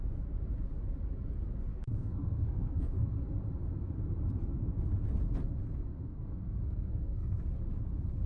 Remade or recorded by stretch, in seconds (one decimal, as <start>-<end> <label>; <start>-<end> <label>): 0.0-1.7 recorded; 1.7-3.1 remade; 3.1-6.0 recorded; 6.0-7.4 remade; 7.4-8.3 recorded